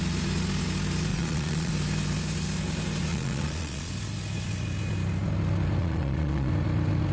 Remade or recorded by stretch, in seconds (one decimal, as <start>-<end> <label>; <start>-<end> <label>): 0.0-1.1 recorded; 1.1-1.7 remade; 1.7-3.1 recorded; 3.1-3.9 remade; 3.9-5.8 recorded; 5.8-6.5 remade; 6.5-7.1 recorded